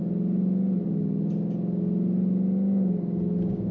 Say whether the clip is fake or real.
real